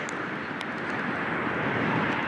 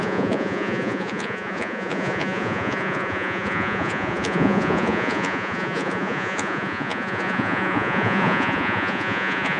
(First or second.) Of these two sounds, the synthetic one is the second